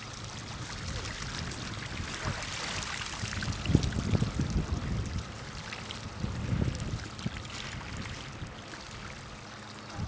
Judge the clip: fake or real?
real